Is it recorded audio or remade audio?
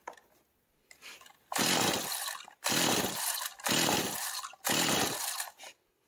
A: recorded